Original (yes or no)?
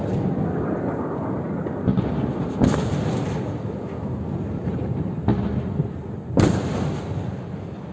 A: yes